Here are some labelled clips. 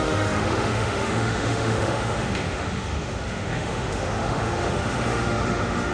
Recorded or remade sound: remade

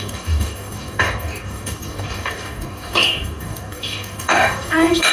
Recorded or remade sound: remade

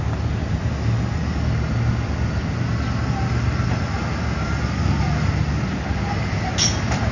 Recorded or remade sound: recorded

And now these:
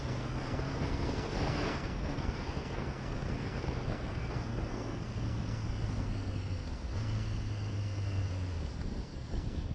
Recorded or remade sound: remade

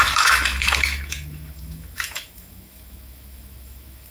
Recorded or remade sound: remade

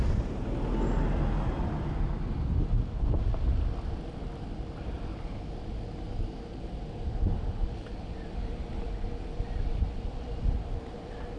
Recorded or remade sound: recorded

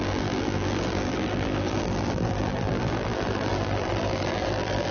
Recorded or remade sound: remade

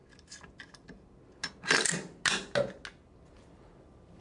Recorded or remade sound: recorded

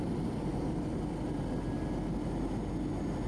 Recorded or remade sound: recorded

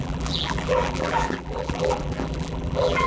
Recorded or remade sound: remade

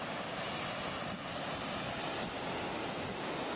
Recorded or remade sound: recorded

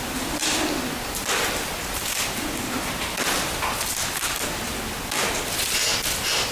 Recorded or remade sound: recorded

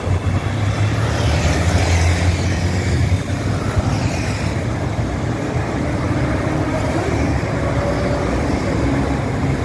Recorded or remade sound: recorded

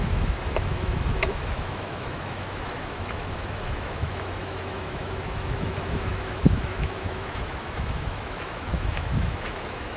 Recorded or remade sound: remade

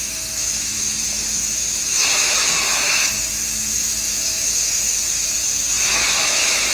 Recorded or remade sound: remade